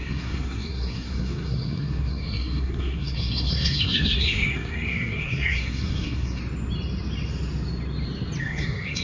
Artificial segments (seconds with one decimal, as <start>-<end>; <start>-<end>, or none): 0.0-6.4; 8.4-9.0

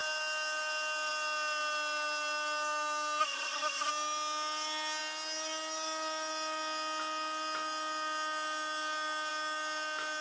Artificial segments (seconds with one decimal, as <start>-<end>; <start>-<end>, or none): 3.2-3.9

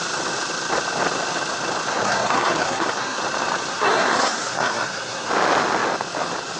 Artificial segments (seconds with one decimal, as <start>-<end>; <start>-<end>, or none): 1.9-3.2; 3.7-5.3

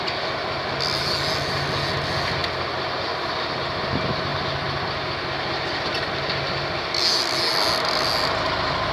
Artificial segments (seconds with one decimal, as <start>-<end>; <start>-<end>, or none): none

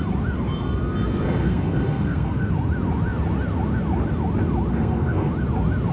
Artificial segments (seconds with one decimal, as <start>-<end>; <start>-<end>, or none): 1.1-2.5; 4.7-5.3

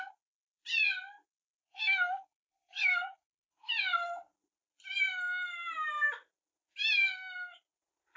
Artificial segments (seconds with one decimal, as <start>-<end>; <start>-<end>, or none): 1.7-3.7